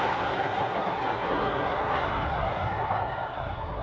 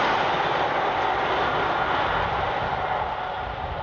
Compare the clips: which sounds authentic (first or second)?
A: second